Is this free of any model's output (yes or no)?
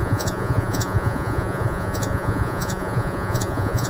no